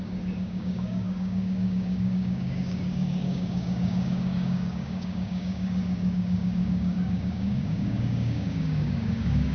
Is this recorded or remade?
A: remade